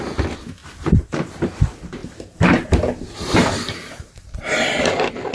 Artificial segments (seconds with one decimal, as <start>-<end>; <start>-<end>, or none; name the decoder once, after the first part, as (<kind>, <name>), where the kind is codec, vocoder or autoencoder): 0.6-1.3 (vocoder, BigVGAN v2); 2.0-5.3